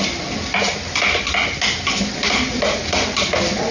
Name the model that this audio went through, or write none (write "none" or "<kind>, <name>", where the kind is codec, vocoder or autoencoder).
none